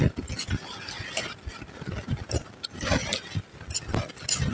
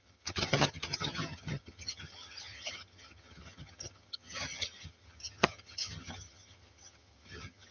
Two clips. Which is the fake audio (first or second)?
second